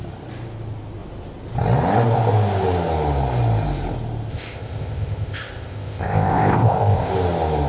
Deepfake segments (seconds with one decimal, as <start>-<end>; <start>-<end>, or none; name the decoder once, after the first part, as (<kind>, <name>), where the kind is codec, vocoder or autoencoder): 4.3-7.1 (codec, ZipCodec)